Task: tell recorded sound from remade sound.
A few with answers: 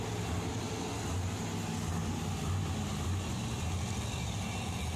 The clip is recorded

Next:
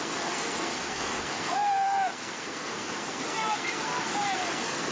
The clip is remade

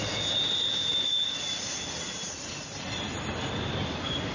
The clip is recorded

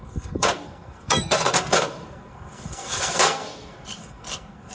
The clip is remade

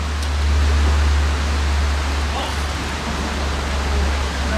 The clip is recorded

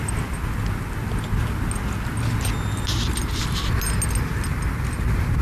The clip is recorded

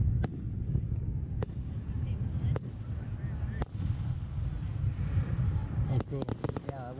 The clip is recorded